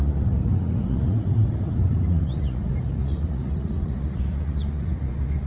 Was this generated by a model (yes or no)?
yes